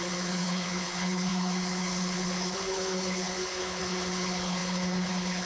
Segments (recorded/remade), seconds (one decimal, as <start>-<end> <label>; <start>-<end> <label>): 0.0-5.5 remade